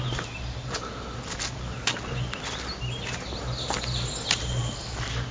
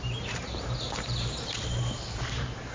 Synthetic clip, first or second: second